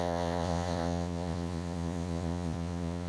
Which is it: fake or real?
fake